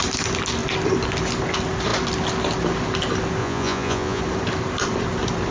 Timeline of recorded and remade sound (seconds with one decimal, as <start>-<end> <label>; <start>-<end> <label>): 0.0-3.4 recorded; 3.4-4.2 remade; 4.2-5.5 recorded

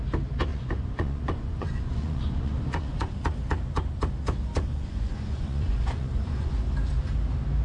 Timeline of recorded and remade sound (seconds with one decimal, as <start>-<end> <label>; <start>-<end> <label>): 0.0-0.5 recorded; 0.5-3.1 remade; 3.1-4.7 recorded; 4.7-6.5 remade; 6.5-7.6 recorded

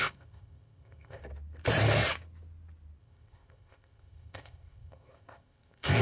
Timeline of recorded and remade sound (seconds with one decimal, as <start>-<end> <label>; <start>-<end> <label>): 0.0-1.2 remade; 1.2-3.0 recorded; 3.0-6.0 remade

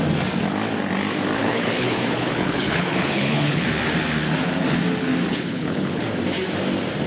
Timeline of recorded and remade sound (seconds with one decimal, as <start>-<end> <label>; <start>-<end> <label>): 0.0-1.4 recorded; 1.4-3.6 remade; 3.6-5.3 recorded; 5.3-6.0 remade; 6.0-7.1 recorded

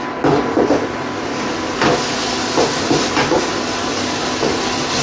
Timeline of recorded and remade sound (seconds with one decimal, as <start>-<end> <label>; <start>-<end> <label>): 0.0-5.0 recorded